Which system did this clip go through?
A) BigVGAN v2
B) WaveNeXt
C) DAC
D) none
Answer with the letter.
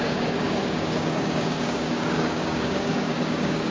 C